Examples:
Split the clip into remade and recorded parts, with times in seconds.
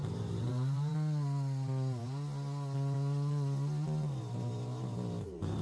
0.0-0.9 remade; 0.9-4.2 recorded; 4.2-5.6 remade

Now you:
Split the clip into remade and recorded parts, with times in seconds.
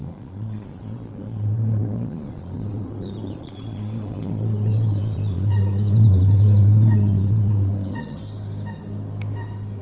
0.0-8.2 remade; 8.2-9.8 recorded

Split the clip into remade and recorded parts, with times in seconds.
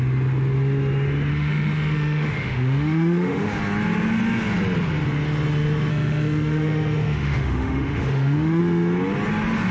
0.0-1.3 recorded; 1.3-3.6 remade; 3.6-5.9 recorded; 5.9-8.6 remade; 8.6-9.7 recorded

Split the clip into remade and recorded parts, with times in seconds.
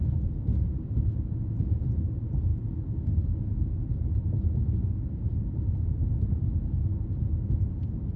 0.0-8.2 recorded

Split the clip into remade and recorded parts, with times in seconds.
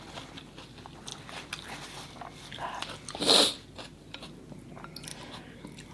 0.0-1.1 recorded; 1.1-1.7 remade; 1.7-5.1 recorded; 5.1-5.9 remade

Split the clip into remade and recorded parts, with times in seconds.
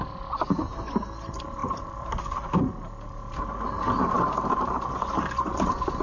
0.0-1.6 recorded; 1.6-2.6 remade; 2.6-4.0 recorded; 4.0-4.9 remade; 4.9-6.0 recorded